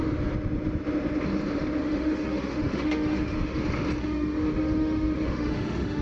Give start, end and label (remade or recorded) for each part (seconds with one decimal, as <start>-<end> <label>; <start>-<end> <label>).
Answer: 0.0-1.8 recorded; 1.8-3.6 remade; 3.6-4.0 recorded; 4.0-6.0 remade

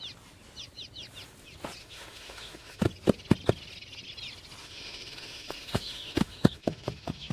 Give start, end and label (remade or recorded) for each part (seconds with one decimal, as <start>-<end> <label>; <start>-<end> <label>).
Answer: 0.0-1.8 recorded; 1.8-2.8 remade; 2.8-4.6 recorded; 4.6-7.3 remade

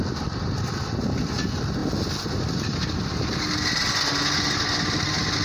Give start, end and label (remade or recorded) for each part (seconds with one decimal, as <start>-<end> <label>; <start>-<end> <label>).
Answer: 0.0-5.4 recorded

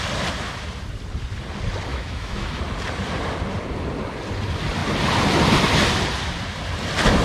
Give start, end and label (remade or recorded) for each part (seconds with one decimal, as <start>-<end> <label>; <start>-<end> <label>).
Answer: 0.0-1.9 recorded; 1.9-2.6 remade; 2.6-7.2 recorded

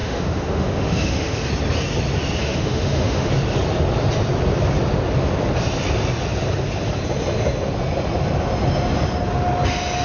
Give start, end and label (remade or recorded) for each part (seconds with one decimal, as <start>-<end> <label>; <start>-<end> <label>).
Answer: 0.0-1.5 remade; 1.5-2.4 recorded; 2.4-3.3 remade; 3.3-10.0 recorded

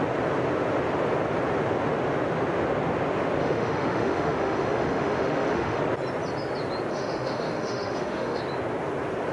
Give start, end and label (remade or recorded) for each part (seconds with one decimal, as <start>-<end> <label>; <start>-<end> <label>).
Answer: 0.0-3.4 recorded; 3.4-5.8 remade; 5.8-6.9 recorded; 6.9-8.4 remade; 8.4-9.3 recorded

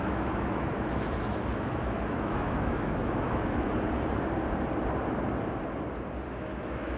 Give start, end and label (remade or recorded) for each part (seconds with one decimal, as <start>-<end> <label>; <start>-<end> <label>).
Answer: 0.0-3.7 remade; 3.7-6.4 recorded; 6.4-7.0 remade